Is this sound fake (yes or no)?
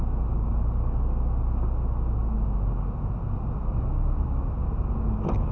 no